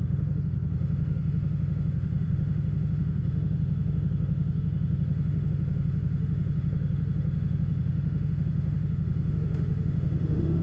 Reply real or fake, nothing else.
fake